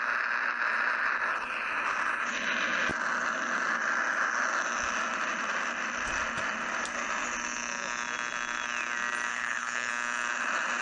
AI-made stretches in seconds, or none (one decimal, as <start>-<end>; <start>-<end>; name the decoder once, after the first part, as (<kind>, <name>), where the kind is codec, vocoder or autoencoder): 9.3-9.9 (codec, HILCodec)